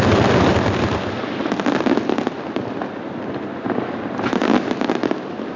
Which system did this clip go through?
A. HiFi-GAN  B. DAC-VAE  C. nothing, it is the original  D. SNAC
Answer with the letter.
C